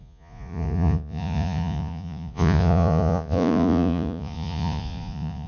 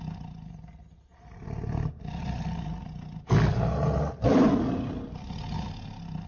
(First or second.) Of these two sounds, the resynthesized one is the first